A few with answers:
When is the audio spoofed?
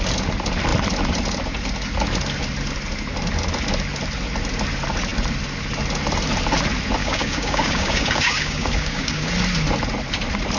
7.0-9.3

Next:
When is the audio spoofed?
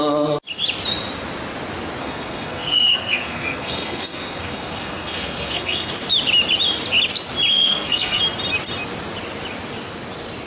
2.0-5.9; 7.5-8.2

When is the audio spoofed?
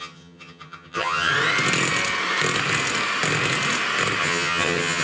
0.0-1.3; 4.2-5.0